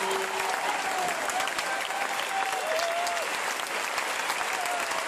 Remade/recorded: recorded